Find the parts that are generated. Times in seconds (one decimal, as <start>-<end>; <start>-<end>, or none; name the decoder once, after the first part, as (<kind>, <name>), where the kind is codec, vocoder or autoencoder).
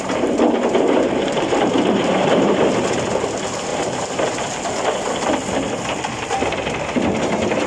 0.0-2.6 (vocoder, BigVGAN v2); 3.7-4.4